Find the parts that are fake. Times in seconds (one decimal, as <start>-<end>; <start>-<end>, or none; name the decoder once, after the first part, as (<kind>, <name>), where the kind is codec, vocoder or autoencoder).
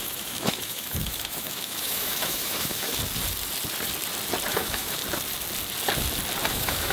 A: 0.0-2.9 (autoencoder, DAC-VAE); 4.5-5.0; 6.5-6.9